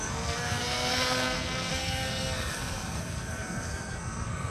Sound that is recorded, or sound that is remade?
remade